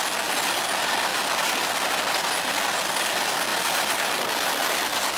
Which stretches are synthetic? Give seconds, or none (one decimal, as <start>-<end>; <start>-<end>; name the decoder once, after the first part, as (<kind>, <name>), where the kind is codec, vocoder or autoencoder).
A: 1.1-1.7 (vocoder, BigVGAN v2)